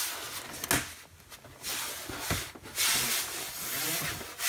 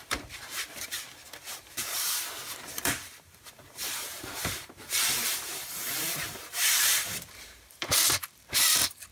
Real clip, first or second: first